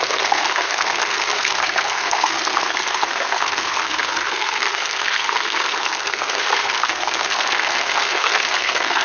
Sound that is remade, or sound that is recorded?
remade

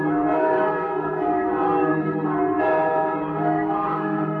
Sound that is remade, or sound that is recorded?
remade